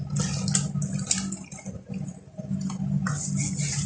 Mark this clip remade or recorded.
recorded